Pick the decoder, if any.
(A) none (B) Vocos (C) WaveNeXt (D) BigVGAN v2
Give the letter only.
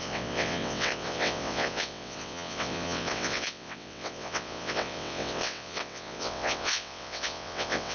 C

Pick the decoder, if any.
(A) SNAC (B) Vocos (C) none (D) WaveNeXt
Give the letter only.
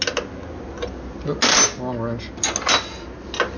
C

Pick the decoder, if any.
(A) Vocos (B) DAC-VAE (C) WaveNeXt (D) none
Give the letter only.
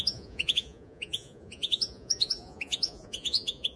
A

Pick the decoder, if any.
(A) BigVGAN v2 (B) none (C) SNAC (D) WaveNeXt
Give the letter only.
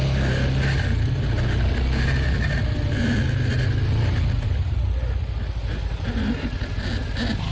B